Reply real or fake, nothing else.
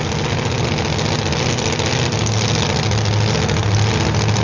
real